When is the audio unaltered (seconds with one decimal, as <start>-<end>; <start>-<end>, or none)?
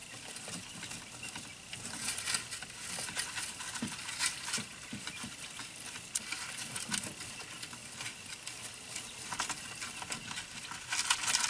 0.0-11.5